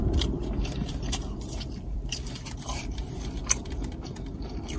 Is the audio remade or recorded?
remade